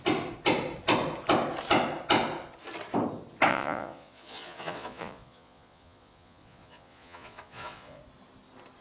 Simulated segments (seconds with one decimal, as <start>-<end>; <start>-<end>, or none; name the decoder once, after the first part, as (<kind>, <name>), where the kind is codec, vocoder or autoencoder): 3.5-8.0 (vocoder, Vocos)